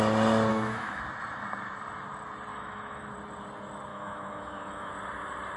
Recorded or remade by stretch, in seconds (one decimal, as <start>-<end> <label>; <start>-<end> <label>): 0.0-0.5 recorded; 0.5-1.0 remade; 1.0-2.5 recorded; 2.5-3.1 remade; 3.1-3.9 recorded; 3.9-4.9 remade; 4.9-5.6 recorded